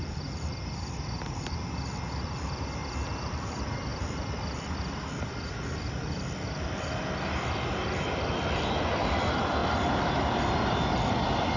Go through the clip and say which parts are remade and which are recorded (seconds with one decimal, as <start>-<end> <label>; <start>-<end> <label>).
0.0-11.6 recorded